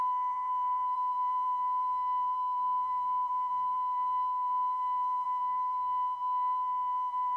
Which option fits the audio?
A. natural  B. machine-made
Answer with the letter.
B